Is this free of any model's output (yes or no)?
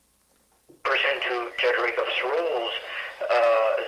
yes